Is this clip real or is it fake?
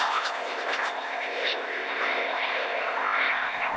fake